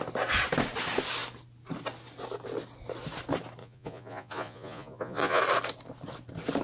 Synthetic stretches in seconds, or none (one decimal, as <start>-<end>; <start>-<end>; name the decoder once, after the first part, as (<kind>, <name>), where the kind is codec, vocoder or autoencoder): 3.6-5.4 (vocoder, Vocos)